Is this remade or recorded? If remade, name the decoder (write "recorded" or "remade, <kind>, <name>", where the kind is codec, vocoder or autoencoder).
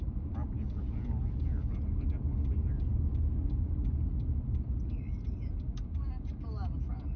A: recorded